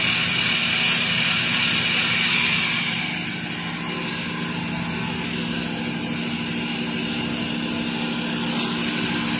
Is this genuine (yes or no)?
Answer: yes